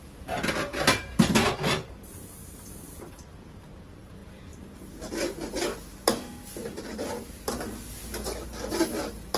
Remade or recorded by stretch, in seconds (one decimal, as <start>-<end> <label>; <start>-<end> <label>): 0.0-0.7 recorded; 0.7-3.7 remade; 3.7-9.4 recorded